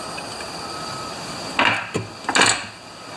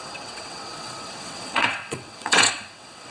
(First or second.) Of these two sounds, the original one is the first